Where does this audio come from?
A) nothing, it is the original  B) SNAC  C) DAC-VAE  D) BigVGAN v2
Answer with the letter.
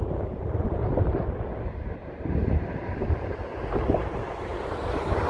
D